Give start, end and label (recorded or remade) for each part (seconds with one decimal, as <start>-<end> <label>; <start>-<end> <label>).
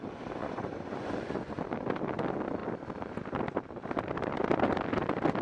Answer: 0.0-0.4 recorded; 0.4-1.6 remade; 1.6-5.4 recorded